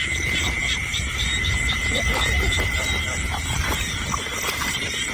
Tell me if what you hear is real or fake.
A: fake